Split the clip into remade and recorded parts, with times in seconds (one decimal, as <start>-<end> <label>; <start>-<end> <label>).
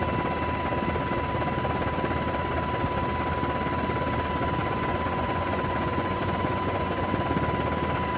0.0-4.6 recorded; 4.6-7.2 remade; 7.2-8.2 recorded